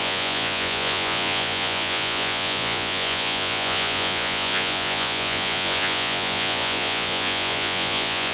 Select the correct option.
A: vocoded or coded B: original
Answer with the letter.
A